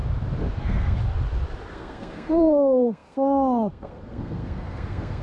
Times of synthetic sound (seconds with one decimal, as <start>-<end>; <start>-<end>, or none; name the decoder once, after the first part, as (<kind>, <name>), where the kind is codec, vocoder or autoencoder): 0.6-1.0 (codec, SNAC); 1.7-5.2